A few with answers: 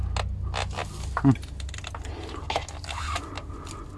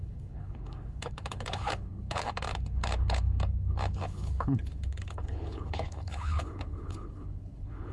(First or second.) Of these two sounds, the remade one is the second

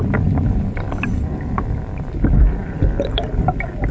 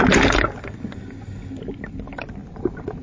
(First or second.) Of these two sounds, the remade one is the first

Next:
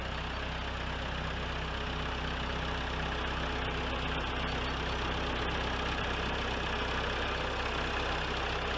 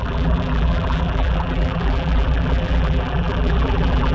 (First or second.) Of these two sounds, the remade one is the second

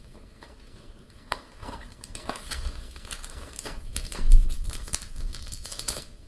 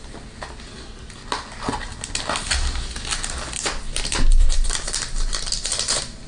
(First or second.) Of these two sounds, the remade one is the first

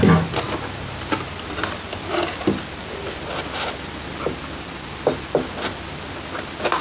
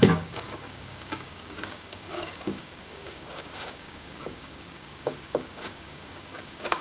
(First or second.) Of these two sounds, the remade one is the second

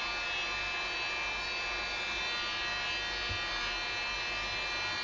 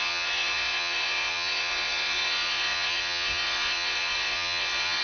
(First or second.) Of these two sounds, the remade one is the second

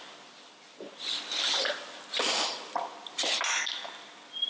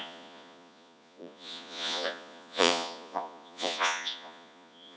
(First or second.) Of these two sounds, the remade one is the second